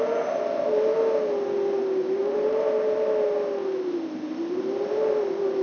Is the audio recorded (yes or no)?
yes